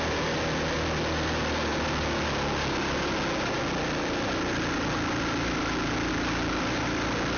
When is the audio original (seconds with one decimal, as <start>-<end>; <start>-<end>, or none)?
0.0-7.4